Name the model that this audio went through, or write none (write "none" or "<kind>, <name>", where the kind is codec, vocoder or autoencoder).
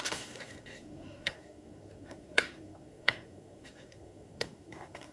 codec, SNAC